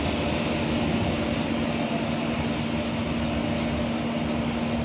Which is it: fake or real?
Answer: real